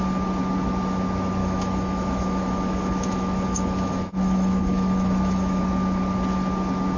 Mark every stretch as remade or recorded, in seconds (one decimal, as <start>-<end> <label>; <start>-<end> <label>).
0.0-1.4 recorded; 1.4-5.6 remade; 5.6-7.0 recorded